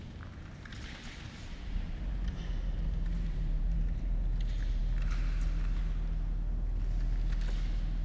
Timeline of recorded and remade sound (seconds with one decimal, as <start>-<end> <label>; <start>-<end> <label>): 0.0-0.7 recorded; 0.7-4.2 remade; 4.2-8.0 recorded